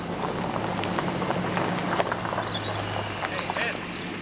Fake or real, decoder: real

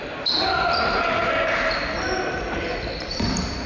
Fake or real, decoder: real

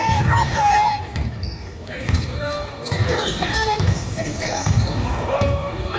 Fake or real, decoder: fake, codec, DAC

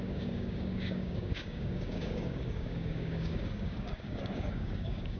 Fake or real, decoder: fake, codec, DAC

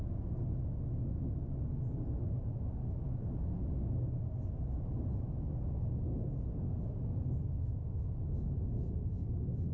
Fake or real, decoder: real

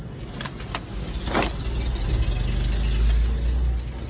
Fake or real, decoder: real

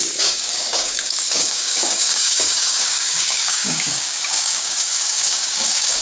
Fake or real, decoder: fake, codec, DAC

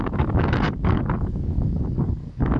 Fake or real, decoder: fake, codec, DAC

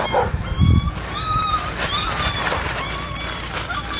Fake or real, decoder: real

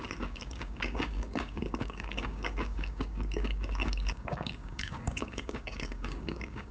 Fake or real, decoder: fake, codec, DAC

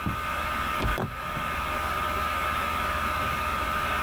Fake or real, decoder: fake, codec, DAC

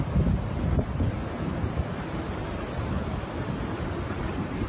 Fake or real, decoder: real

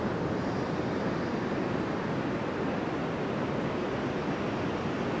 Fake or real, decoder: real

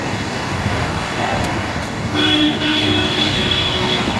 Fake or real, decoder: fake, codec, DAC